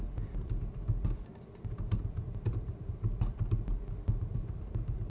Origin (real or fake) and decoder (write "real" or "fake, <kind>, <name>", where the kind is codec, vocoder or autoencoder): fake, vocoder, BigVGAN v2